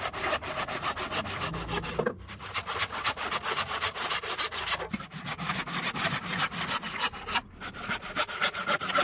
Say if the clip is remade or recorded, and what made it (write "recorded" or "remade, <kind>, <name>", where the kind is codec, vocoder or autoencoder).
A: recorded